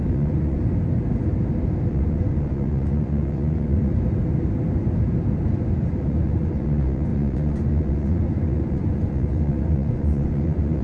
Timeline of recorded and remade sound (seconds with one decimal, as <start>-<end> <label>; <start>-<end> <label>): 0.0-0.6 remade; 0.6-1.9 recorded; 1.9-3.9 remade; 3.9-6.0 recorded; 6.0-10.8 remade